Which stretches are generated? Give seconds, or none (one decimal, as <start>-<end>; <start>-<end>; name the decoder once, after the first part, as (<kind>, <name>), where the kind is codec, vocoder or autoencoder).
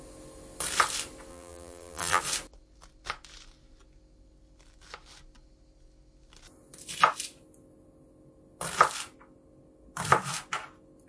1.3-2.2 (vocoder, BigVGAN v2)